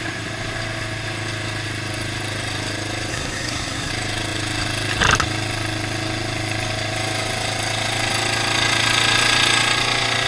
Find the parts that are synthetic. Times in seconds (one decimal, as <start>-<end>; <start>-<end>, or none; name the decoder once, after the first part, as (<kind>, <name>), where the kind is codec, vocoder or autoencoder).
3.1-3.9 (codec, SNAC)

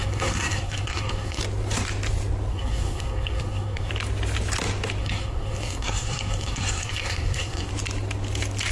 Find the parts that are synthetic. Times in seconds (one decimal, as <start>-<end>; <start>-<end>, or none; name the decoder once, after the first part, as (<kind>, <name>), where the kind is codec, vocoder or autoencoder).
0.0-1.4 (codec, SNAC); 2.5-3.9; 5.0-7.7

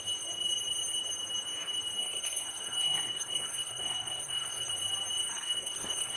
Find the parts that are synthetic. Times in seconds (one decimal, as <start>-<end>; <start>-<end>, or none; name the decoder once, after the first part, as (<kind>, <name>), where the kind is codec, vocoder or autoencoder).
2.0-4.7 (codec, SNAC); 5.3-6.2